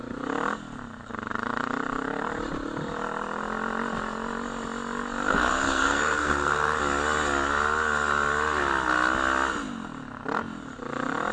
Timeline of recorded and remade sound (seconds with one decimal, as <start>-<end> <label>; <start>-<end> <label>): 0.0-5.3 recorded; 5.3-6.8 remade; 6.8-11.3 recorded